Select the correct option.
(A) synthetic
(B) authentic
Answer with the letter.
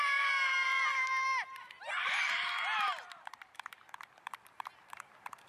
A